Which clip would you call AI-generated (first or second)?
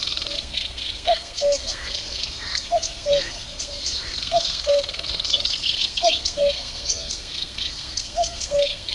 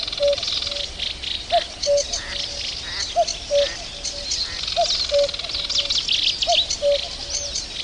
first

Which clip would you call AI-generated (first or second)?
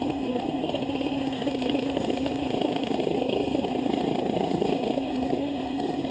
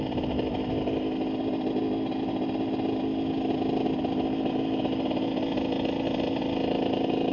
first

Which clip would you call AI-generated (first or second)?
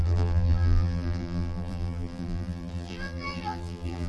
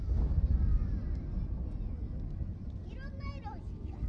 first